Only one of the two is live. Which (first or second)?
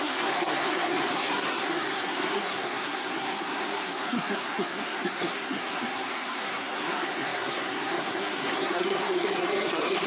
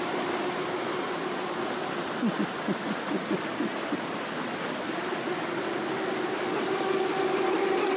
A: second